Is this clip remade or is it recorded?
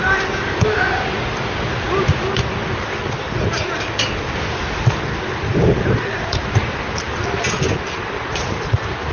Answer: recorded